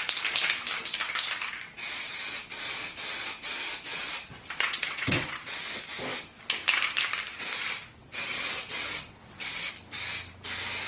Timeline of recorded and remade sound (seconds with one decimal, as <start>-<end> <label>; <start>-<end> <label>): 0.0-3.9 recorded; 3.9-5.6 remade; 5.6-8.0 recorded; 8.0-9.7 remade; 9.7-10.9 recorded